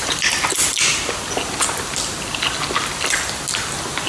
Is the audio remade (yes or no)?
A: no